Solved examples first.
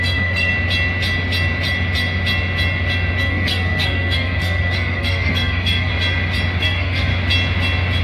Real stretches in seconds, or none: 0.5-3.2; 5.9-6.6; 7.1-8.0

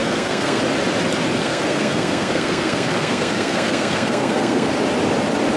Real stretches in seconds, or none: 0.6-1.4; 4.7-5.6